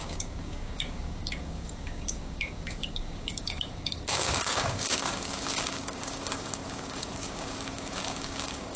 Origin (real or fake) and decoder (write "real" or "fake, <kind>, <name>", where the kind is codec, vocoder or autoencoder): fake, codec, DAC